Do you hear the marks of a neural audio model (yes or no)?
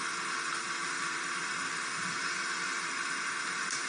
no